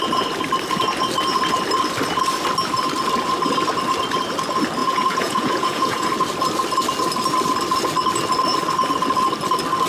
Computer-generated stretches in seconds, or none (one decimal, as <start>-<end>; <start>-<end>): 4.8-6.1